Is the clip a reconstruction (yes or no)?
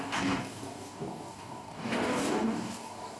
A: yes